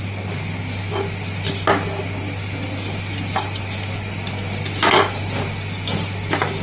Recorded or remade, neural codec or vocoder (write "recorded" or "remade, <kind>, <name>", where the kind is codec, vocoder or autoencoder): recorded